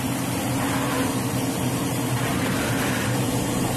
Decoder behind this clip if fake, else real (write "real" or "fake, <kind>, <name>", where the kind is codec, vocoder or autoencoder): fake, vocoder, BigVGAN v2